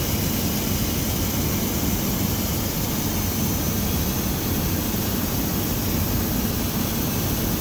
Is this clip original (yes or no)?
yes